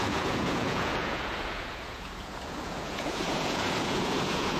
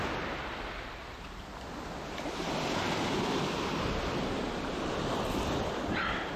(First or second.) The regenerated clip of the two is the first